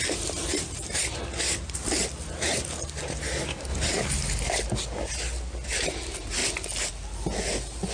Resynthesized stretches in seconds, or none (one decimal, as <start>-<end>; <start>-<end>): none